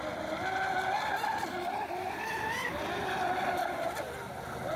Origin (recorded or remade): recorded